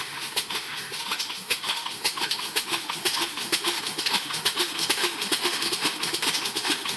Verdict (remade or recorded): remade